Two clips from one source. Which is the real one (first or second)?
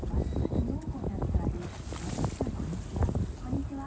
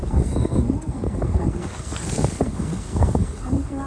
first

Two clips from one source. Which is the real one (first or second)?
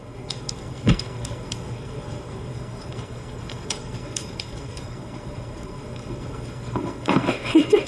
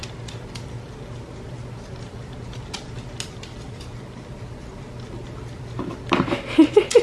second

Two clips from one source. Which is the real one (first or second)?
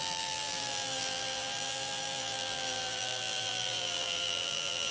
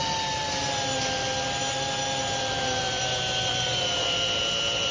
second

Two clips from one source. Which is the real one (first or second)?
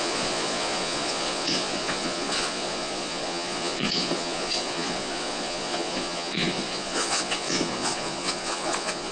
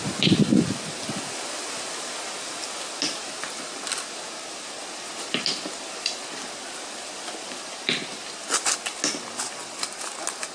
second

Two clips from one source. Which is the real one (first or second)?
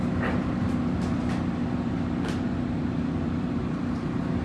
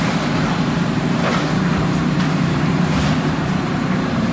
first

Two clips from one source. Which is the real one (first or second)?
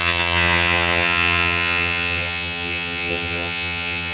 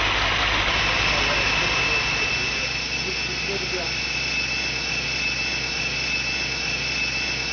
second